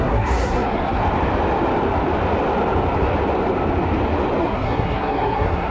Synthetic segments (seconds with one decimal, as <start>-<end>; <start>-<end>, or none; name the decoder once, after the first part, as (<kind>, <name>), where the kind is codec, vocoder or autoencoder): 0.0-1.0 (codec, SNAC); 4.4-5.7